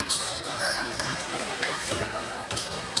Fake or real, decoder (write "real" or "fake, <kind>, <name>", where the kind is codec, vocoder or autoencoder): fake, codec, SNAC